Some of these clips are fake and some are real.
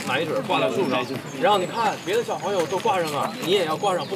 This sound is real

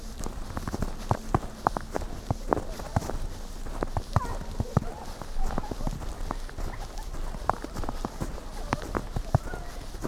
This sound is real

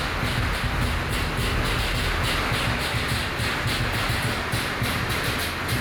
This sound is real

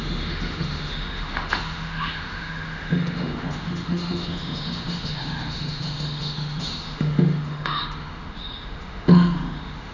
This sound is fake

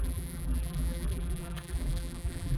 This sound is fake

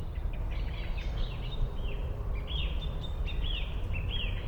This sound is real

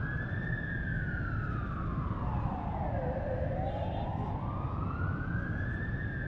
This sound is real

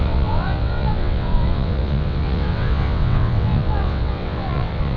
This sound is fake